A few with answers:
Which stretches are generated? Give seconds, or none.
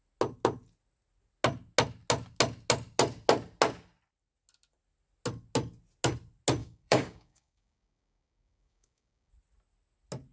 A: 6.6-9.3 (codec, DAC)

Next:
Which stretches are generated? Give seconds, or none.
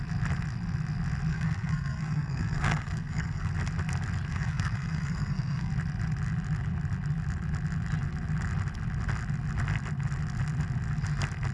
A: 1.3-3.5 (codec, SNAC); 4.3-5.7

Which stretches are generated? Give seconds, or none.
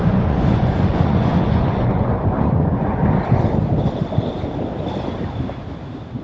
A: 0.0-3.0 (vocoder, Vocos)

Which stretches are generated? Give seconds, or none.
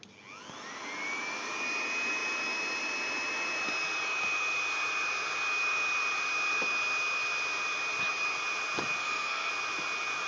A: 9.0-9.5 (codec, SNAC)